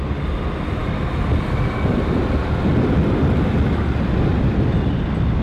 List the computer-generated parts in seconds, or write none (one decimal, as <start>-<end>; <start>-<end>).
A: 2.7-3.8; 4.3-5.0